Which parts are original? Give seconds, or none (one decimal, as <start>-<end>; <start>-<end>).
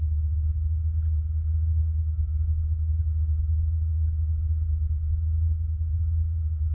0.0-1.8; 3.0-6.7